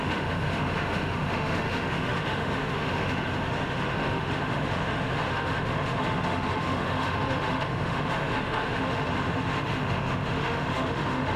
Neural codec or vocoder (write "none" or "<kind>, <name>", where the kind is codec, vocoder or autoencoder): autoencoder, DAC-VAE